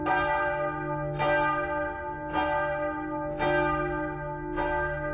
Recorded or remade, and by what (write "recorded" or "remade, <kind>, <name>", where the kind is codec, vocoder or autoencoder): recorded